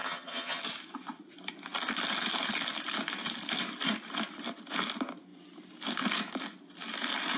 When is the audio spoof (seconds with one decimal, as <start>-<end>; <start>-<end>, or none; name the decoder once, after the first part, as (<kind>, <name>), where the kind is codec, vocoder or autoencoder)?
0.0-0.6 (vocoder, HiFi-GAN)